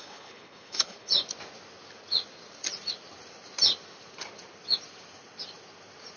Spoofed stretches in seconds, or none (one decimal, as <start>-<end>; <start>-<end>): 0.0-1.1